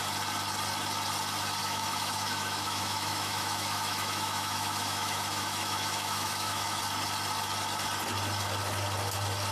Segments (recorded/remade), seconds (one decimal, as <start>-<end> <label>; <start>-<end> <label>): 0.0-1.6 recorded; 1.6-6.8 remade; 6.8-9.5 recorded